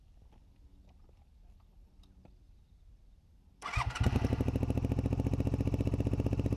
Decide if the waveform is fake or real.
real